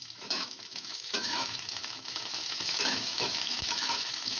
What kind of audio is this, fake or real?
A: fake